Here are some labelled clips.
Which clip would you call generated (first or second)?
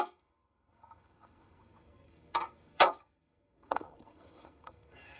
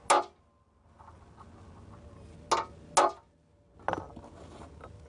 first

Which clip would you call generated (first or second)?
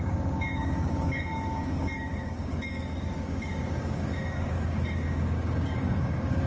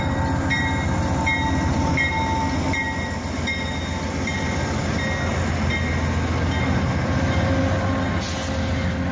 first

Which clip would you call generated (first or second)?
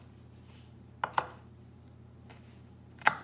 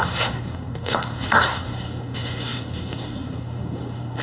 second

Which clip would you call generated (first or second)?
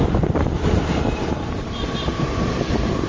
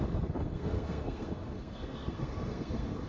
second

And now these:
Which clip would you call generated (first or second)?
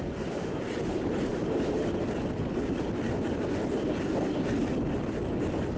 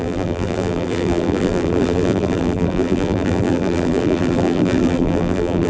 second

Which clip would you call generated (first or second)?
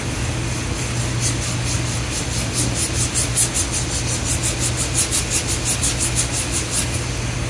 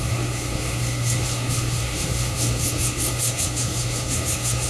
second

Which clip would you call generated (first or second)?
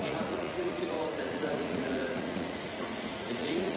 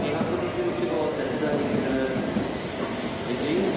first